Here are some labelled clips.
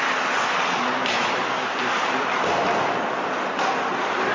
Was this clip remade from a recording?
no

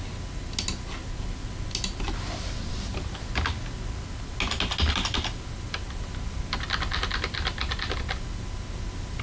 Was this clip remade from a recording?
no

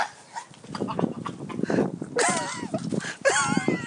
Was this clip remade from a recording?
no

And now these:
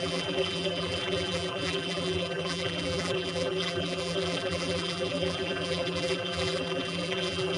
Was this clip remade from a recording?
yes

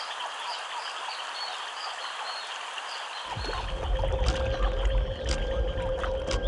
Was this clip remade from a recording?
no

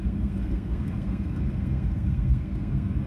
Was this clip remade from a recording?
yes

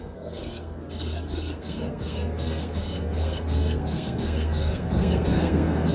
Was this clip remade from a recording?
yes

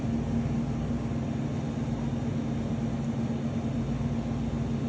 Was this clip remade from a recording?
no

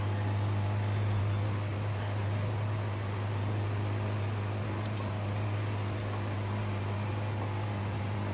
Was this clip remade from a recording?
no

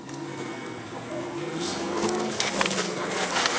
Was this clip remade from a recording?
yes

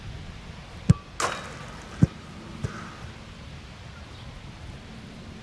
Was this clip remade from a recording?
no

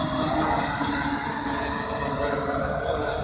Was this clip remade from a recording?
no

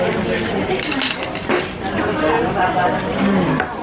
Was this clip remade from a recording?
no